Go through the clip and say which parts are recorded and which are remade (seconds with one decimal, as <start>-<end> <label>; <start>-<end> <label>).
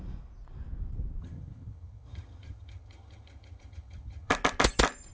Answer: 0.0-1.2 recorded; 1.2-4.3 remade; 4.3-5.1 recorded